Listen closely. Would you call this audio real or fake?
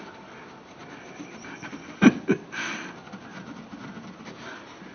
real